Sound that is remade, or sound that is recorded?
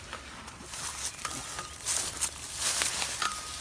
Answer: recorded